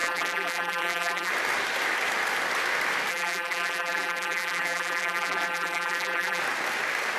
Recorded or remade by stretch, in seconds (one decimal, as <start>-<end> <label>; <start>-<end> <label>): 0.0-1.3 remade; 1.3-3.1 recorded; 3.1-6.4 remade; 6.4-7.2 recorded